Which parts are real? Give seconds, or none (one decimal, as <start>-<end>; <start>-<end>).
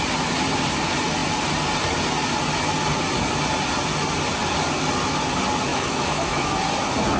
0.0-5.7; 6.5-7.2